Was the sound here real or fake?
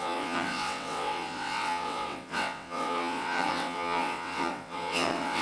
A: fake